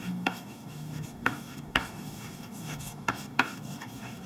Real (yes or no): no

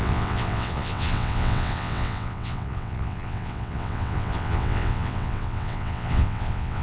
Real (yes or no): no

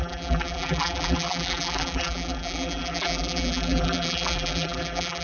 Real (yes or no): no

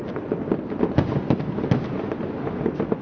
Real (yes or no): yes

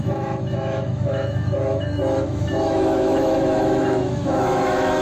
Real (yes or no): no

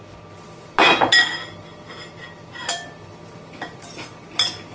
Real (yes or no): yes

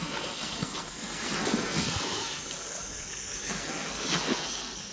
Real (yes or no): no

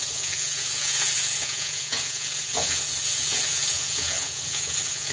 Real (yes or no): no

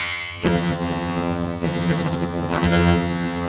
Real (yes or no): no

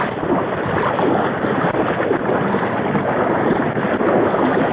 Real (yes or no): yes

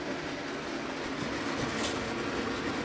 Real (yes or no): yes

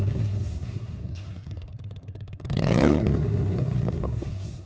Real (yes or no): no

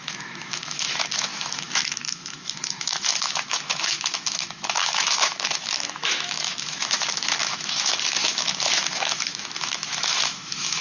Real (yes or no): no